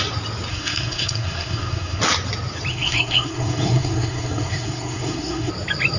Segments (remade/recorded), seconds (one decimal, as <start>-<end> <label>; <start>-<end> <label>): 0.0-0.5 recorded; 0.5-2.0 remade; 2.0-2.7 recorded; 2.7-5.5 remade; 5.5-6.0 recorded